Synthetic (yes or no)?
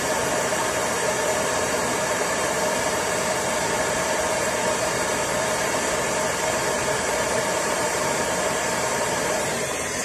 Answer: yes